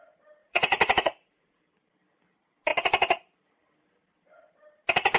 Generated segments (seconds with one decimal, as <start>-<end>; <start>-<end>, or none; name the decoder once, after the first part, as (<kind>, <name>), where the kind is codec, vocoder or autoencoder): 0.4-1.6 (vocoder, Vocos)